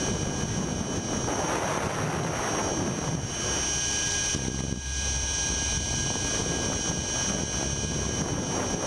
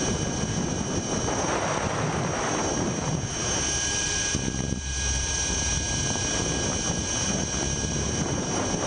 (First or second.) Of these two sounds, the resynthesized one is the second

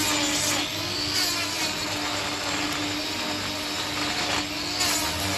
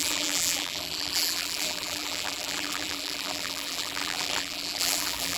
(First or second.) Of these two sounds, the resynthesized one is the second